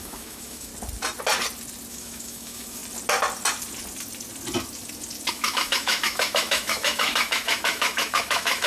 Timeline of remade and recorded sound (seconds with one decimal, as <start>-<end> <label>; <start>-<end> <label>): 0.0-0.7 remade; 0.7-1.9 recorded; 1.9-2.8 remade; 2.8-5.3 recorded; 5.3-8.7 remade